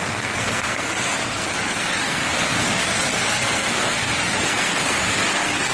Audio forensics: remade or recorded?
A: remade